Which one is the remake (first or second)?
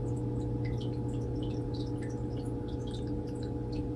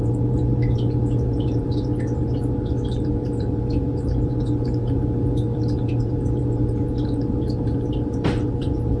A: second